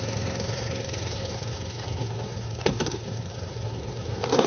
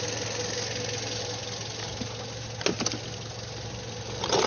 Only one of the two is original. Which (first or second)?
second